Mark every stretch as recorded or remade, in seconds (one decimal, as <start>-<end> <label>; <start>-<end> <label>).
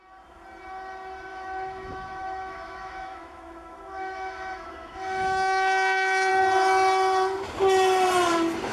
0.0-1.3 recorded; 1.3-6.3 remade; 6.3-8.7 recorded